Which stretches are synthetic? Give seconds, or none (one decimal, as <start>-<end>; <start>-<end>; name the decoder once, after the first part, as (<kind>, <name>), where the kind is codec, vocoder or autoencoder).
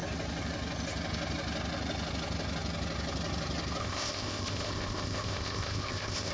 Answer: 3.8-6.3 (codec, ZipCodec)